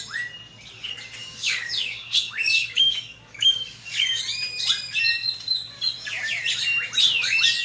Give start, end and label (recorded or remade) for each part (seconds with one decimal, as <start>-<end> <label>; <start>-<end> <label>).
0.0-1.2 recorded; 1.2-4.2 remade; 4.2-7.6 recorded